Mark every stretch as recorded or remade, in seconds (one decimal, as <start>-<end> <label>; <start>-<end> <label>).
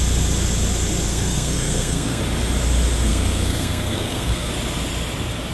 0.0-1.1 recorded; 1.1-2.2 remade; 2.2-3.1 recorded; 3.1-4.5 remade; 4.5-5.5 recorded